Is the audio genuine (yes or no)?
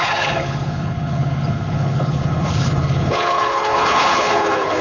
no